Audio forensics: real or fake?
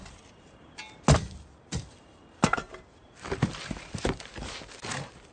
real